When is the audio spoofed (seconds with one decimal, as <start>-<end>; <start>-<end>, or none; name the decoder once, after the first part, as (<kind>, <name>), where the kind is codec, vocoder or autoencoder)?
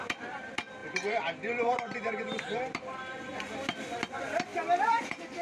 0.8-4.0 (vocoder, BigVGAN v2)